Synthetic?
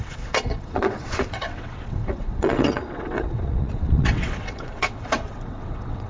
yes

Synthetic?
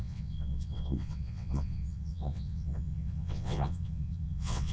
yes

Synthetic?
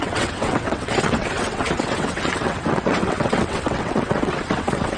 yes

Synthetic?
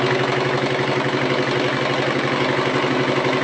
no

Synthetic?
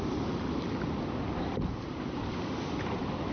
no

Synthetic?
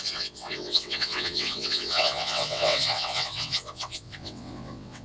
yes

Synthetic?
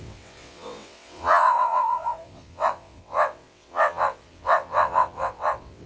yes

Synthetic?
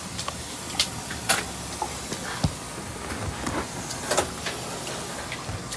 no